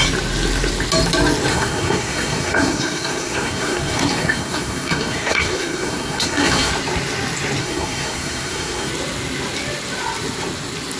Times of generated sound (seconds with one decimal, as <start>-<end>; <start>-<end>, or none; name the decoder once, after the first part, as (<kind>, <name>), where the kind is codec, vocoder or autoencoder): 1.5-6.7 (codec, SNAC); 7.6-8.9